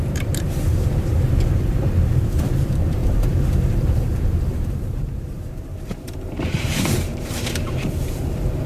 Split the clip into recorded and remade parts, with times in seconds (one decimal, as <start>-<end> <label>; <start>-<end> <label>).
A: 0.0-8.7 remade